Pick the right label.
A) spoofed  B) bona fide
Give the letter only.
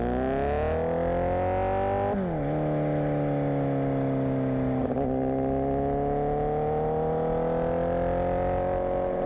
B